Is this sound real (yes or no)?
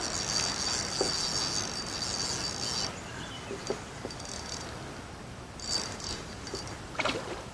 yes